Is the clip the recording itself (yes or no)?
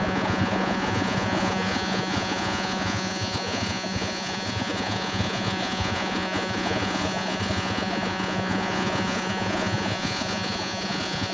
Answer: no